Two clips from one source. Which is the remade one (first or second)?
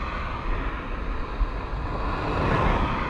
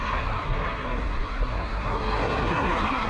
second